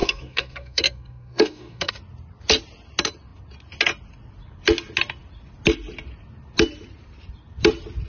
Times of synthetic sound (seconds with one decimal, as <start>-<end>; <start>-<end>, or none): 0.0-1.9